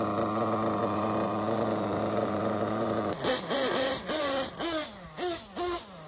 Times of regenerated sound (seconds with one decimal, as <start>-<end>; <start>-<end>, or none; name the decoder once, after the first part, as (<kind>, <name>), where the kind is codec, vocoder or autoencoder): 0.8-4.5 (vocoder, BigVGAN v2)

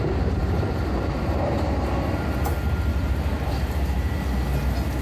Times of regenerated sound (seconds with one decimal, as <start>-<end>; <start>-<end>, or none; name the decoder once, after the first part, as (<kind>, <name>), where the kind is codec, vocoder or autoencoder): 0.4-2.5 (vocoder, BigVGAN v2); 2.9-3.8

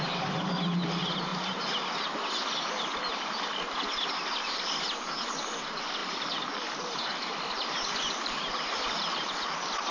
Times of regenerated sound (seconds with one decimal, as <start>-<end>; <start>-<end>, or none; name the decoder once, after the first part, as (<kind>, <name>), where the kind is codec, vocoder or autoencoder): 1.3-4.3 (vocoder, BigVGAN v2); 6.0-9.9

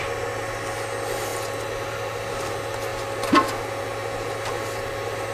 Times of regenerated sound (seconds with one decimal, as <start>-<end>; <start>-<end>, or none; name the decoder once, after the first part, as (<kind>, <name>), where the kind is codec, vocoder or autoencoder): none

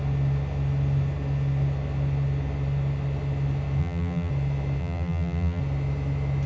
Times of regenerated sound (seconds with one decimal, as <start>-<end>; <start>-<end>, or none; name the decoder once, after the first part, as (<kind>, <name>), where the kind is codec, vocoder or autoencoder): 3.8-4.3 (vocoder, BigVGAN v2); 4.8-5.6

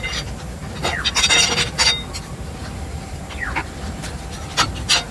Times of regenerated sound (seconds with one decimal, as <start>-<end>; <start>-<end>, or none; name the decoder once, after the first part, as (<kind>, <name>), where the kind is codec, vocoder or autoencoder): 2.6-3.2 (vocoder, BigVGAN v2); 3.6-4.2

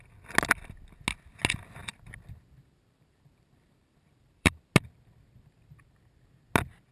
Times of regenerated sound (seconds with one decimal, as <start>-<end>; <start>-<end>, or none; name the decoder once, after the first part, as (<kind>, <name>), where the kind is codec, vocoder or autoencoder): 1.8-4.7 (vocoder, BigVGAN v2)